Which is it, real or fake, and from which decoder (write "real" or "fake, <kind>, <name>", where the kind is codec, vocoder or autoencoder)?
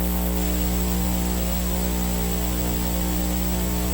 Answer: real